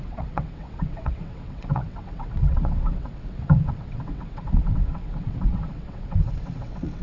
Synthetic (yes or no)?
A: yes